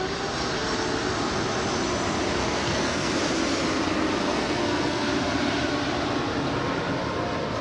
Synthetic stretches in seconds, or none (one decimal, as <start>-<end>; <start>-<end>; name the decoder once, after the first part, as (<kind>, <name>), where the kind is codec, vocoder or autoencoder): 2.4-3.1 (codec, SNAC); 4.2-5.1